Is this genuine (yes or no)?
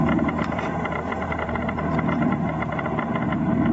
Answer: no